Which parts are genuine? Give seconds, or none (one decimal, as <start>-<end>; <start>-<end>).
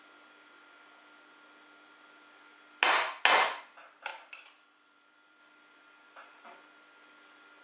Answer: 0.0-4.1; 5.4-7.6